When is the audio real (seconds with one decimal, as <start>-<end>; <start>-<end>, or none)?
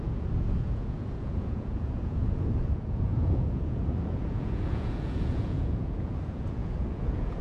none